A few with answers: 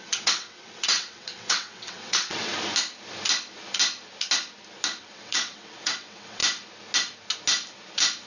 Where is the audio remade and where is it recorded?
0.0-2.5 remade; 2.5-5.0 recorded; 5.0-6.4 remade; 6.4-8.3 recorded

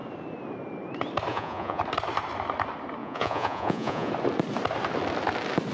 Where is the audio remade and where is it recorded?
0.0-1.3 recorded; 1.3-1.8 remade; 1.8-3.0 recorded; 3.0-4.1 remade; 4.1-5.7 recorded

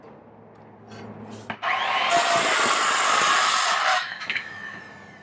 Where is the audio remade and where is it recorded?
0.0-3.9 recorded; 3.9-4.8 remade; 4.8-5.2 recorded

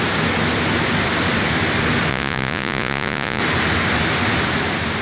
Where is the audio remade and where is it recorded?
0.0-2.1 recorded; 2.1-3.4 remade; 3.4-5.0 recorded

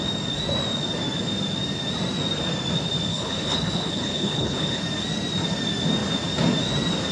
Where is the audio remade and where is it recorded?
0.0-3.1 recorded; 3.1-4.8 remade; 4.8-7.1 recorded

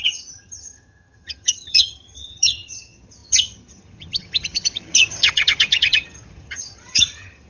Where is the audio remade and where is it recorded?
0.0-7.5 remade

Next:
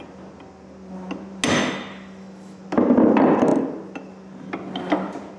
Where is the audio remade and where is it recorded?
0.0-1.6 recorded; 1.6-2.6 remade; 2.6-5.4 recorded

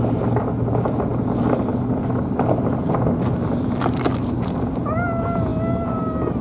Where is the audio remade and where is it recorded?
0.0-6.4 recorded